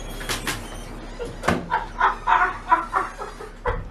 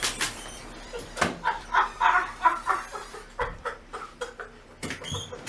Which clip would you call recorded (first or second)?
first